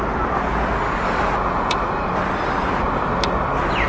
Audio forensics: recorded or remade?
recorded